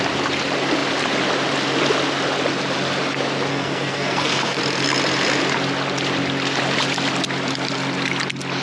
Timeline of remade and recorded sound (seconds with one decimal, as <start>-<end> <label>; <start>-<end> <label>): 0.0-3.5 recorded; 3.5-4.6 remade; 4.6-8.6 recorded